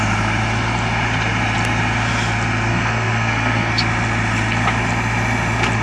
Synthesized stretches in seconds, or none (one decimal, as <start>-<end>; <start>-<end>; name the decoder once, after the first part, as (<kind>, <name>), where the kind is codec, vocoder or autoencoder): 2.7-3.7 (codec, SNAC)